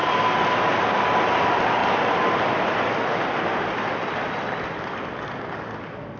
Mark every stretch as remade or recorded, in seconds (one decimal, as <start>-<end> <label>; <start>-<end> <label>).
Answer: 0.0-6.2 recorded